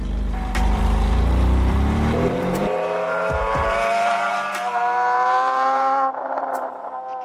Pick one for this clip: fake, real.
fake